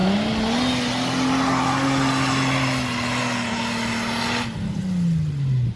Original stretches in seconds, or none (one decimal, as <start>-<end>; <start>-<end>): 0.0-5.8